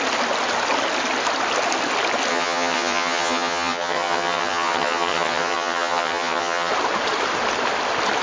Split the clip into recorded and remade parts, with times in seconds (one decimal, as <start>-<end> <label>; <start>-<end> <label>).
0.0-2.3 recorded; 2.3-6.7 remade; 6.7-8.2 recorded